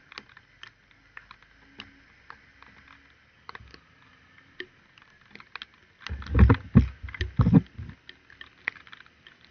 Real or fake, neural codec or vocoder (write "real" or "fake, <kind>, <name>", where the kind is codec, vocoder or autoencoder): real